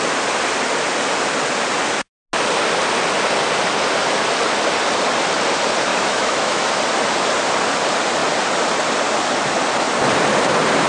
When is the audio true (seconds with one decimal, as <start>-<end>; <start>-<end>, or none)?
0.0-5.9; 6.7-10.9